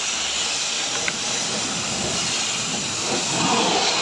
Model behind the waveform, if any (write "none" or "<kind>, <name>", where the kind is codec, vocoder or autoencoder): none